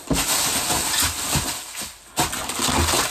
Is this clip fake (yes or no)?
no